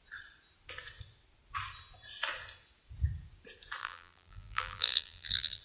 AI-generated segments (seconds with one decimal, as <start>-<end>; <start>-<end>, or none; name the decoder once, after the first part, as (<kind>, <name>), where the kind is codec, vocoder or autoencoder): 3.8-5.6 (vocoder, BigVGAN v2)

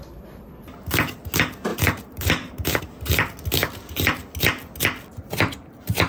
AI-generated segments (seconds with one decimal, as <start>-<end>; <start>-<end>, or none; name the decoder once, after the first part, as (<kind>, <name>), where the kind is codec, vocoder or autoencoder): 1.7-2.8 (vocoder, BigVGAN v2)

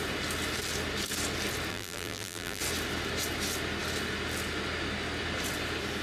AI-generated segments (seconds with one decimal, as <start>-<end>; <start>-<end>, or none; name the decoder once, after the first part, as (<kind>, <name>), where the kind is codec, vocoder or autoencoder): 1.7-2.6 (vocoder, BigVGAN v2)

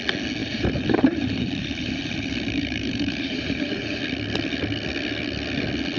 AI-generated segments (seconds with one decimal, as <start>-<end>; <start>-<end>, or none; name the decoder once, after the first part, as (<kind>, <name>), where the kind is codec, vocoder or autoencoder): 0.4-4.0 (vocoder, BigVGAN v2)

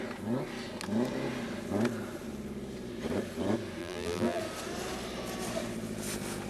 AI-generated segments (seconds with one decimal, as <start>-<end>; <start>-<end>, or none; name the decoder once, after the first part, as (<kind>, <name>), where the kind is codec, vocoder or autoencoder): 3.8-4.4 (vocoder, BigVGAN v2)